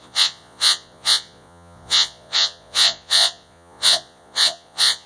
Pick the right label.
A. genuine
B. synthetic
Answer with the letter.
B